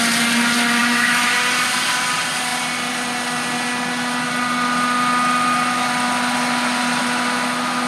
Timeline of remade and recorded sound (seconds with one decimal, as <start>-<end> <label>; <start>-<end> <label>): 0.0-0.8 recorded; 0.8-1.3 remade; 1.3-7.9 recorded